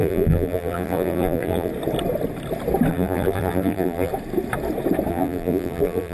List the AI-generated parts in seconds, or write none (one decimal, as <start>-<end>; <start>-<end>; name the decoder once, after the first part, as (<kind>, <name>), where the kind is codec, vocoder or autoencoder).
0.0-1.7 (vocoder, BigVGAN v2); 2.9-4.1; 5.1-6.1